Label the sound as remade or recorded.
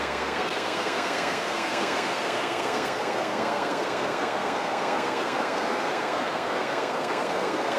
remade